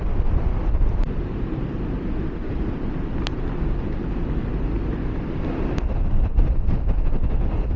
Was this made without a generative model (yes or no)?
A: yes